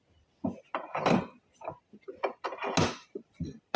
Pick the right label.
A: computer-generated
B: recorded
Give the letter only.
B